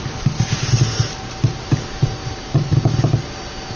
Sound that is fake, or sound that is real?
real